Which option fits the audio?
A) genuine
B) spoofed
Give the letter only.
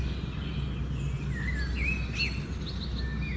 A